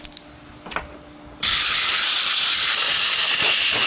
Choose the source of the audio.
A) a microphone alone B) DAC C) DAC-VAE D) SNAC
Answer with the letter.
A